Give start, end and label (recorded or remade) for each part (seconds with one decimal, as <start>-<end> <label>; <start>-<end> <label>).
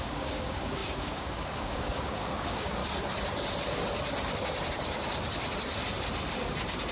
0.0-2.8 remade; 2.8-6.9 recorded